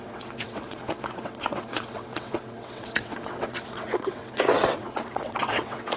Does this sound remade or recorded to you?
remade